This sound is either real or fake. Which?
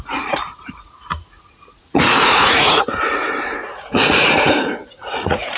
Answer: fake